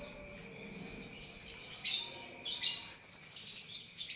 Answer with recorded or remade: recorded